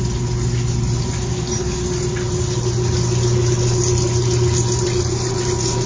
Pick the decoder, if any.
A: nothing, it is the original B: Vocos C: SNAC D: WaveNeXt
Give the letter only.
A